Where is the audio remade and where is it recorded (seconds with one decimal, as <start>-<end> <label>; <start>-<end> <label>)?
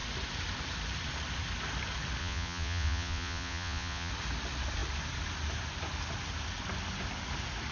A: 0.0-2.2 recorded; 2.2-4.1 remade; 4.1-7.7 recorded